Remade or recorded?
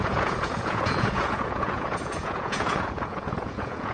remade